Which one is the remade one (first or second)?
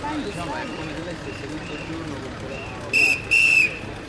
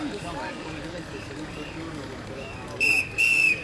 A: second